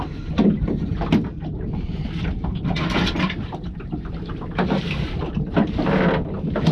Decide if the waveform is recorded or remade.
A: recorded